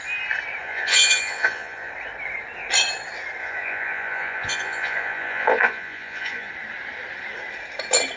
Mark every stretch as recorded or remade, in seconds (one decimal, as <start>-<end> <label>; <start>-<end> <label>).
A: 0.0-0.6 recorded; 0.6-1.9 remade; 1.9-3.4 recorded; 3.4-6.5 remade; 6.5-8.2 recorded